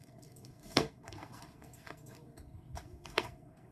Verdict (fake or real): fake